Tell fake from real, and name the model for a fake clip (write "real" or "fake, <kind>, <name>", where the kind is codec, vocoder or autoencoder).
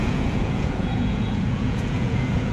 fake, vocoder, Vocos